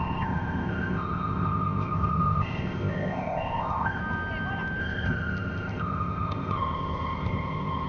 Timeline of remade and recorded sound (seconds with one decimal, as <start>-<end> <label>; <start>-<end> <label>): 0.0-4.0 remade; 4.0-4.8 recorded; 4.8-7.9 remade